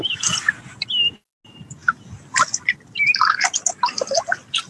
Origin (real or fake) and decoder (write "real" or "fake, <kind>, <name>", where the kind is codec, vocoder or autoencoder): real